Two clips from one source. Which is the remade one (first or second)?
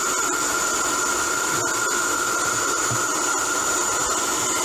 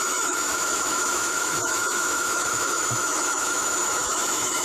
second